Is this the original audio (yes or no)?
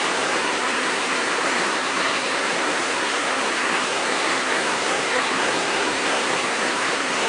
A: no